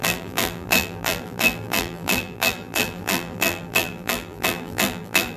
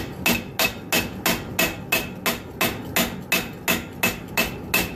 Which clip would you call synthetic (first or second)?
first